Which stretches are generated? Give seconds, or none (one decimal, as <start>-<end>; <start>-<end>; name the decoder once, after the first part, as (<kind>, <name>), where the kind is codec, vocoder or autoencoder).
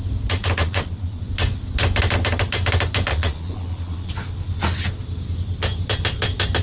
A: 0.6-1.2 (vocoder, Vocos); 3.1-4.1